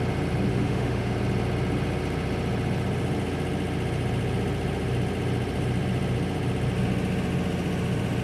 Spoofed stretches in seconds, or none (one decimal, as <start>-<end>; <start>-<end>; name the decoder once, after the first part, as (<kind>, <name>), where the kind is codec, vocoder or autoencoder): 0.5-1.1 (autoencoder, DAC-VAE)